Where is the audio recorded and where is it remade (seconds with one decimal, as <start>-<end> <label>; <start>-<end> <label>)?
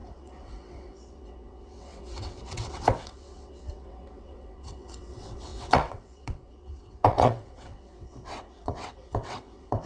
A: 0.0-9.9 remade